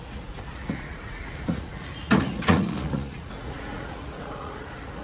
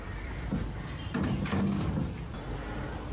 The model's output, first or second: first